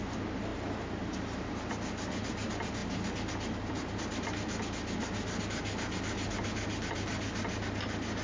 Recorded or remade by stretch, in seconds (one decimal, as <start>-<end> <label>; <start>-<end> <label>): 0.0-8.2 recorded